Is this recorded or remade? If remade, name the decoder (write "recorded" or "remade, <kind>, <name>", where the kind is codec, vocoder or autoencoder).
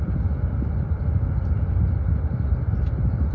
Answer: recorded